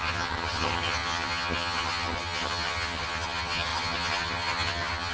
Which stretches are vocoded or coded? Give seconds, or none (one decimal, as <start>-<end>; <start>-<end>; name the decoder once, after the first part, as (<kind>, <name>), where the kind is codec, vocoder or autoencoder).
0.0-5.1 (vocoder, HiFi-GAN)